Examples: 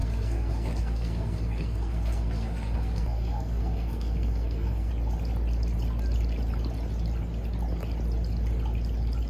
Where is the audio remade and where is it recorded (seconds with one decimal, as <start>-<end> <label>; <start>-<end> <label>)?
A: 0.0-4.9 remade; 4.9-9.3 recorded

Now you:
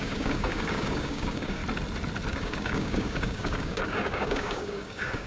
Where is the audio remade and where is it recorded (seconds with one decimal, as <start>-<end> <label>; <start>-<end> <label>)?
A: 0.0-1.6 remade; 1.6-2.3 recorded; 2.3-5.3 remade

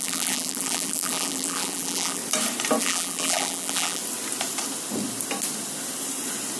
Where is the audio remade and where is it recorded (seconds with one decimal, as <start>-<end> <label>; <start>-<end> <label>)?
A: 0.0-2.2 remade; 2.2-2.8 recorded; 2.8-4.0 remade; 4.0-6.6 recorded